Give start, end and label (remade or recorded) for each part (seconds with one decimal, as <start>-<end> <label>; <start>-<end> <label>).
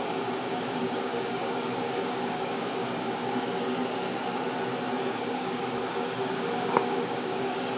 0.0-3.5 remade; 3.5-5.2 recorded; 5.2-7.8 remade